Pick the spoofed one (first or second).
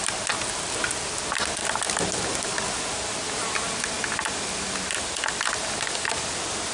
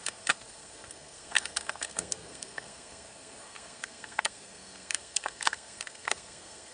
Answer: second